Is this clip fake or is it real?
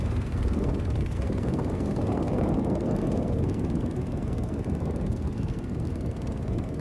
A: fake